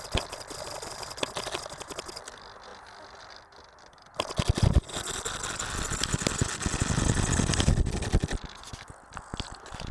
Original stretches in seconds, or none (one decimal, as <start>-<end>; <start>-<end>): 0.0-9.9